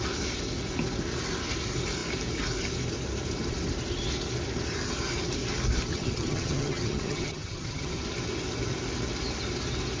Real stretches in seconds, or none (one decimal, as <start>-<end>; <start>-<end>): 0.0-5.9; 8.0-10.0